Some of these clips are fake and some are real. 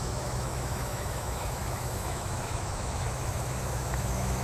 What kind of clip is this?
fake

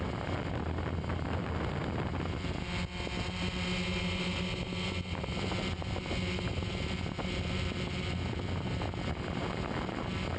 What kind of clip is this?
real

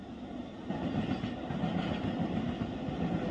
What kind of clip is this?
real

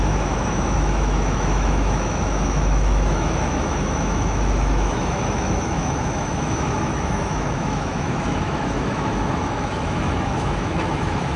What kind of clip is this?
fake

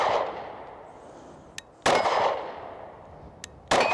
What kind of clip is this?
real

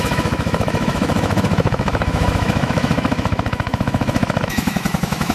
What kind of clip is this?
fake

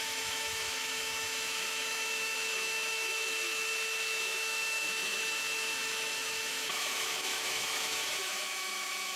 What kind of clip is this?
fake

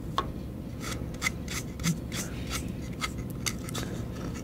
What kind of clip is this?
real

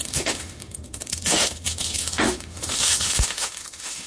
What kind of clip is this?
fake